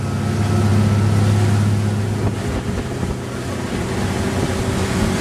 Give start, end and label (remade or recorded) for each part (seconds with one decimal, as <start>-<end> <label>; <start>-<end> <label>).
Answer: 0.0-5.2 recorded